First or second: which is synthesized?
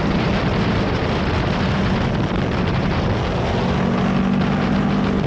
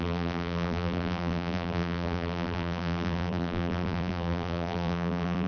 second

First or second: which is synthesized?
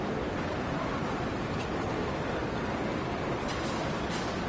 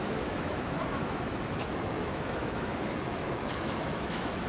second